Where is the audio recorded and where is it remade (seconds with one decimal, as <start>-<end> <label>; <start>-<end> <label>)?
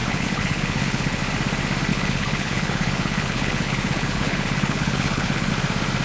0.0-1.2 remade; 1.2-1.9 recorded; 1.9-5.5 remade; 5.5-6.0 recorded